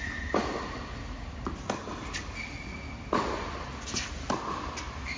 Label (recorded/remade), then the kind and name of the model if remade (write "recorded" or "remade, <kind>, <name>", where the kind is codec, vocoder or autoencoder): recorded